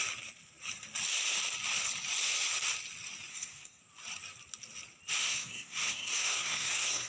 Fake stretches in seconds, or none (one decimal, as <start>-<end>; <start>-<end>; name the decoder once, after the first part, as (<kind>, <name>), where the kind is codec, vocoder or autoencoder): 3.3-3.8 (codec, SNAC); 5.2-7.1